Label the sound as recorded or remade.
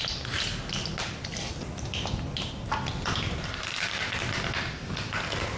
recorded